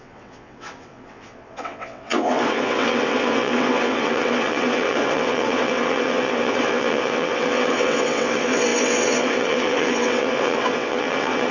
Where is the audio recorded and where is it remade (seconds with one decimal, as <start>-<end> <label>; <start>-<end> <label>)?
0.0-11.5 remade